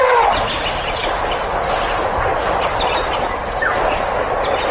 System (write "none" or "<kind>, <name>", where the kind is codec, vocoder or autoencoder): none